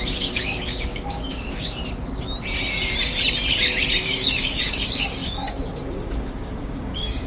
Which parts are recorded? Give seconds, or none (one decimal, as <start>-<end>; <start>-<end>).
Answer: 1.8-4.0